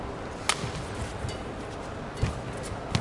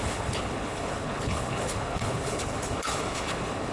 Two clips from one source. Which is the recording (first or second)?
first